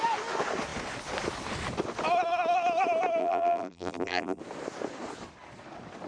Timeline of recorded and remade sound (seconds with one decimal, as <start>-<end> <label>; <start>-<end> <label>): 0.0-3.2 recorded; 3.2-4.4 remade; 4.4-6.1 recorded